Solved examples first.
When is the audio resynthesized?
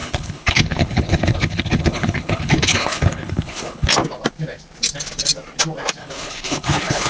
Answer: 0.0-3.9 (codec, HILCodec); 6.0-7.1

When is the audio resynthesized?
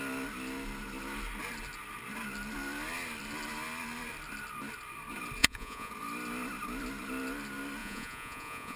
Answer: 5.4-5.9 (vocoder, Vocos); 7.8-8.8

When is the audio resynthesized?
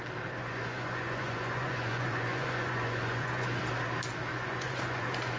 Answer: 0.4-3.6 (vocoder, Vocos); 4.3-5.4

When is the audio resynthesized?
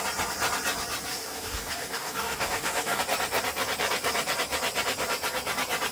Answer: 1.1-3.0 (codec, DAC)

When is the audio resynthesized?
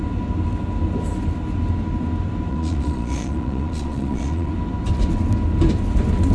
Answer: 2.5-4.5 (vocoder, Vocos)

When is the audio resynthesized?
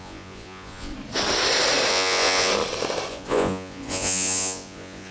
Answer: 0.0-0.9 (vocoder, Vocos); 1.9-2.5; 3.1-5.1